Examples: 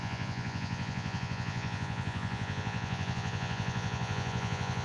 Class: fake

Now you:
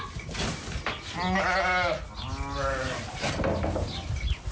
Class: real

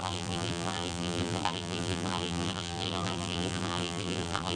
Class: fake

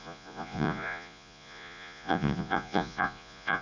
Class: fake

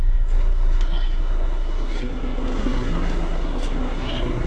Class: fake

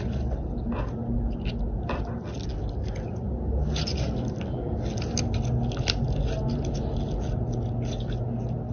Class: real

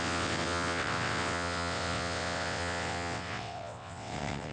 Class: fake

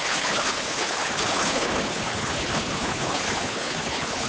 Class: fake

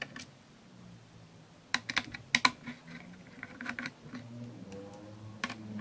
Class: real